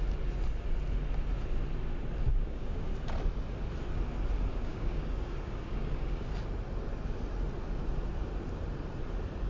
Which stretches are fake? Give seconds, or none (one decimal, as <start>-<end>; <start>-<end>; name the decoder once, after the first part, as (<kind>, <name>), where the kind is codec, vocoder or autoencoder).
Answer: 2.3-2.9 (codec, DAC); 4.5-6.3